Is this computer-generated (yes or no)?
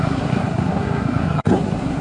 yes